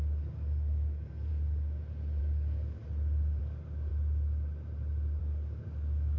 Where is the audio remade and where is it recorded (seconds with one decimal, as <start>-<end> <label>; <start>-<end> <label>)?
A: 0.0-1.3 remade; 1.3-2.2 recorded; 2.2-2.8 remade; 2.8-3.4 recorded; 3.4-3.9 remade; 3.9-5.2 recorded; 5.2-6.2 remade

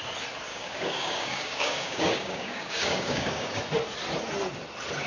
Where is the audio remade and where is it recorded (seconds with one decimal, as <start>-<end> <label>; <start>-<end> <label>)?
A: 0.0-0.5 recorded; 0.5-3.6 remade; 3.6-5.1 recorded

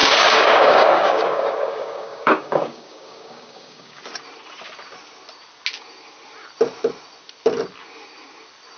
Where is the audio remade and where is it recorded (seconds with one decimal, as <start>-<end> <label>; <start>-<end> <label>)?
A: 0.0-4.0 remade; 4.0-8.8 recorded

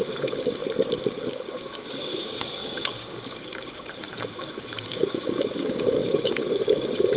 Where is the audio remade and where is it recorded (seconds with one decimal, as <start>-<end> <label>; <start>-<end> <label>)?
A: 0.0-0.6 remade; 0.6-1.1 recorded; 1.1-7.2 remade

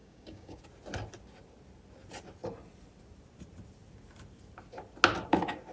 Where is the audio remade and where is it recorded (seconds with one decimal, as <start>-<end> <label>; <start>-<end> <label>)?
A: 0.0-0.6 remade; 0.6-5.7 recorded

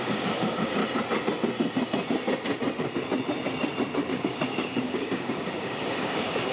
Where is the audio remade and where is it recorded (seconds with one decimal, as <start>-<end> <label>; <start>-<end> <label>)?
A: 0.0-0.8 remade; 0.8-4.1 recorded; 4.1-6.5 remade

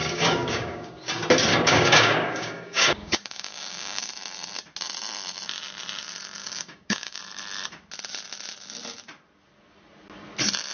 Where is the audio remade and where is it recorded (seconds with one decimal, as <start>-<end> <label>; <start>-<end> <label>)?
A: 0.0-0.9 remade; 0.9-1.5 recorded; 1.5-4.1 remade; 4.1-6.4 recorded; 6.4-7.2 remade; 7.2-10.7 recorded

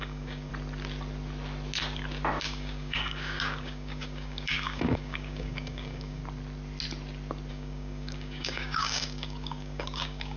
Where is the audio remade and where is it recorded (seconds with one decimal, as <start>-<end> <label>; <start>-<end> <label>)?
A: 0.0-0.5 remade; 0.5-2.4 recorded; 2.4-6.2 remade; 6.2-7.5 recorded; 7.5-10.4 remade